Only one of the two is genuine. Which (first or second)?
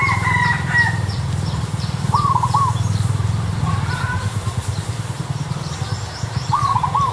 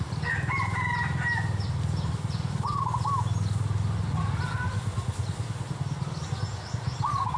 second